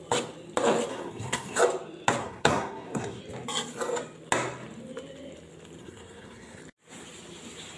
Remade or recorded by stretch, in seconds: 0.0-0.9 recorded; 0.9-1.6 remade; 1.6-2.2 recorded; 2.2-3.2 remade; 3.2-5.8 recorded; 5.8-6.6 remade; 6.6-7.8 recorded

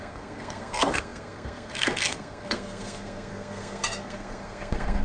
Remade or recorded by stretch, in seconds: 0.0-5.0 remade